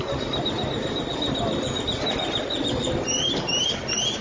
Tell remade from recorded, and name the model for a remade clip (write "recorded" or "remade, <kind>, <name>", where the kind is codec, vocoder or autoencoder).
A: recorded